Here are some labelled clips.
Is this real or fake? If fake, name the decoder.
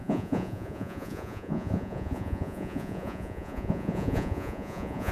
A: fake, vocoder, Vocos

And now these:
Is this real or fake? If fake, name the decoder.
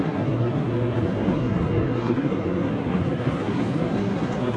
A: fake, codec, SNAC